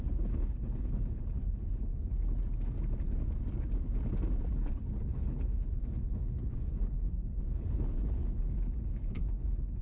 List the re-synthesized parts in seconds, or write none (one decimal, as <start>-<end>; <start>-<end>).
0.0-2.1; 4.5-9.8